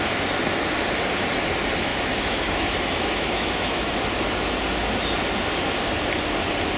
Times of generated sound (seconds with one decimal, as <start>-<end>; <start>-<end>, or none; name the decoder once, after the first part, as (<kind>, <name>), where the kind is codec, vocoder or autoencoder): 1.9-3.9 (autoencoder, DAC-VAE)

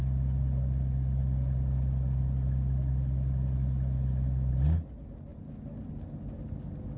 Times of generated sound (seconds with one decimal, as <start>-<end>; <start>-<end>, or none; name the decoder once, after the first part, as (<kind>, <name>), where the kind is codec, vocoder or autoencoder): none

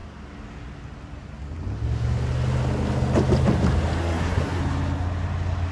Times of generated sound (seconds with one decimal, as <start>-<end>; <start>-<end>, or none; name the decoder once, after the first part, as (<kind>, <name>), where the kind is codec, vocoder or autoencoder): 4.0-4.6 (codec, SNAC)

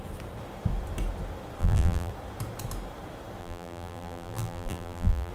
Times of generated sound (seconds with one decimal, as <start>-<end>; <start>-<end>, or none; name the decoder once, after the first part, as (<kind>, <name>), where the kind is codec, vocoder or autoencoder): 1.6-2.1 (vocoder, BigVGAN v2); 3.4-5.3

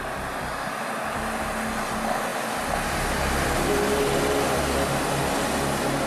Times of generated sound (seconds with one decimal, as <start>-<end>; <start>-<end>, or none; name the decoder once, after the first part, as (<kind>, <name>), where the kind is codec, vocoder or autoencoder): none

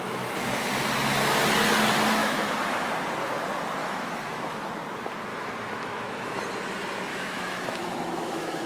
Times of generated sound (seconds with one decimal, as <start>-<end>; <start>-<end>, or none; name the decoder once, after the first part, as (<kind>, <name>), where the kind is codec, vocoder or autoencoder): 2.2-2.9 (autoencoder, DAC-VAE); 3.8-4.7; 5.3-6.4; 7.1-8.7